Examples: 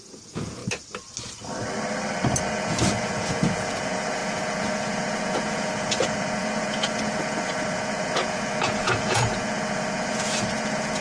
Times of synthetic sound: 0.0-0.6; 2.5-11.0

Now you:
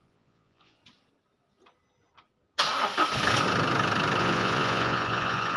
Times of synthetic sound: 0.0-0.8; 4.2-5.6